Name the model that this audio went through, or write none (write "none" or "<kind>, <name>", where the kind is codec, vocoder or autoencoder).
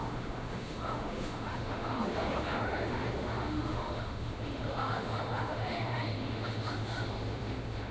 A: autoencoder, DAC-VAE